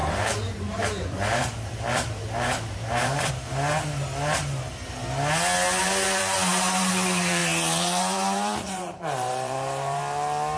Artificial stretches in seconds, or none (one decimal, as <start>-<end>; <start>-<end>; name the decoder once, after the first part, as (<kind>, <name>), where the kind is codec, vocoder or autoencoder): 0.0-3.3 (vocoder, BigVGAN v2); 5.8-6.9; 7.4-10.0